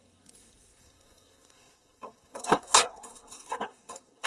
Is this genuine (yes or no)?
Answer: no